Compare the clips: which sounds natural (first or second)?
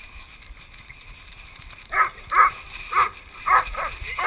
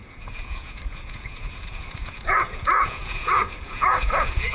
first